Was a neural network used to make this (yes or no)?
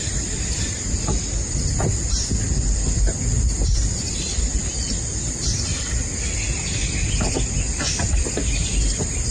no